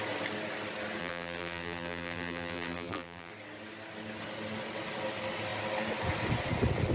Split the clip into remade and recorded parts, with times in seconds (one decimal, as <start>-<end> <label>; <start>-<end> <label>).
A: 0.0-1.0 recorded; 1.0-3.3 remade; 3.3-6.9 recorded

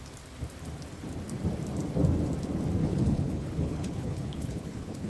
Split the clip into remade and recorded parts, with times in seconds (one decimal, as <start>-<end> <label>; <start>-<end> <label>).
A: 0.0-2.8 recorded; 2.8-5.1 remade

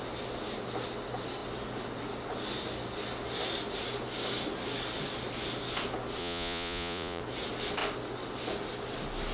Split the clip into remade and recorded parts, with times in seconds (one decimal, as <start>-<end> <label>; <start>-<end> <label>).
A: 0.0-6.2 recorded; 6.2-7.2 remade; 7.2-9.3 recorded

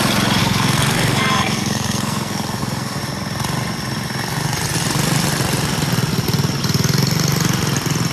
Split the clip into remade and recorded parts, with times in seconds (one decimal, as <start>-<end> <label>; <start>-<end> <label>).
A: 0.0-0.4 recorded; 0.4-3.0 remade; 3.0-8.1 recorded

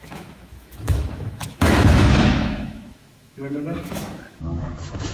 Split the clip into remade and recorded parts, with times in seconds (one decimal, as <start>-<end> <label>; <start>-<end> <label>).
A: 0.0-5.1 remade

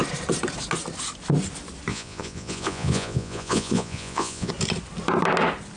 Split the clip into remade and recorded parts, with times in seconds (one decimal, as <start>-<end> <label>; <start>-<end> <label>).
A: 0.0-1.9 recorded; 1.9-4.5 remade; 4.5-5.8 recorded